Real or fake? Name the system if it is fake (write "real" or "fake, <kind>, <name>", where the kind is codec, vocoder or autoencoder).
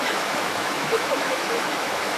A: fake, autoencoder, DAC-VAE